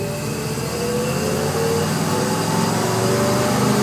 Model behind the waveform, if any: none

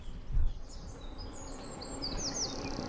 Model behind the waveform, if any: none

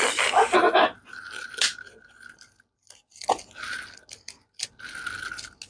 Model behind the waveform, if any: none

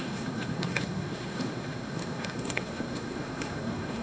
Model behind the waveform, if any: codec, SNAC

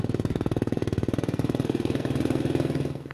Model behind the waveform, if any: codec, SNAC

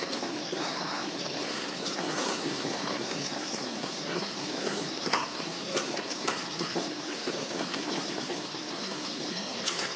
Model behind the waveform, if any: codec, SNAC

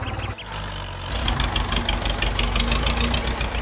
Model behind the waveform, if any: none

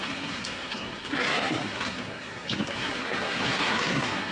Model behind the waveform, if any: codec, SNAC